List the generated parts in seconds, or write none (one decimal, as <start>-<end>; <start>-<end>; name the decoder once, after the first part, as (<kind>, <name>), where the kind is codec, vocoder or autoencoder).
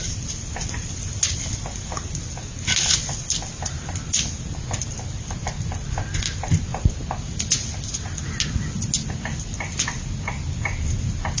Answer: none